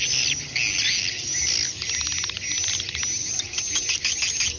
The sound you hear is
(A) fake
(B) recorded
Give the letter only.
B